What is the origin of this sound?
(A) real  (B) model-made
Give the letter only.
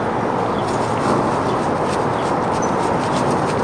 A